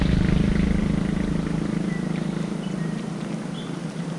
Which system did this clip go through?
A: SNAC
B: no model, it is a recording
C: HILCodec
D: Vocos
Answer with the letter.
B